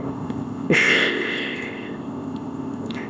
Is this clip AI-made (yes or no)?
yes